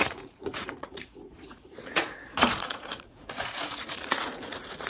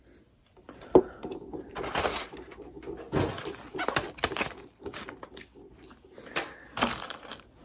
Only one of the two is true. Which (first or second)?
second